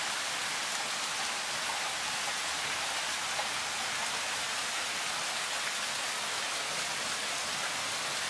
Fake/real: real